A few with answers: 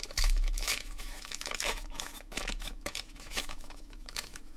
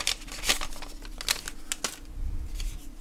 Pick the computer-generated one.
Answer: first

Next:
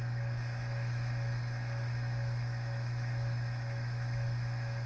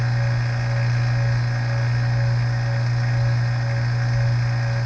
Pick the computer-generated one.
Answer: first